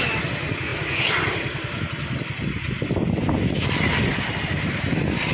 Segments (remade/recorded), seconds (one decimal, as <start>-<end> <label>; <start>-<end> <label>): 0.0-5.3 recorded